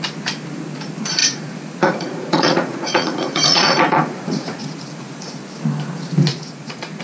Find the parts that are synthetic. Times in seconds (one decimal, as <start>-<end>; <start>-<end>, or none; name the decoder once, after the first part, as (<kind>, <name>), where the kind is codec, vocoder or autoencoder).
1.2-5.4 (vocoder, Vocos); 6.3-7.0